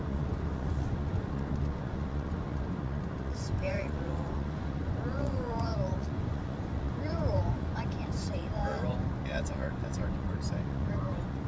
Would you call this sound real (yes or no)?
no